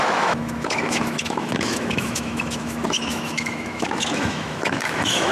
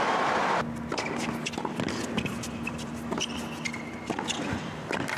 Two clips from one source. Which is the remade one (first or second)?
first